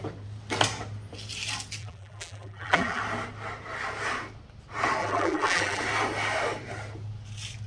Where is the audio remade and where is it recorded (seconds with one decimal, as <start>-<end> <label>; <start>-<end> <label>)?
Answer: 0.0-1.8 recorded; 1.8-3.0 remade; 3.0-5.0 recorded; 5.0-5.8 remade; 5.8-7.7 recorded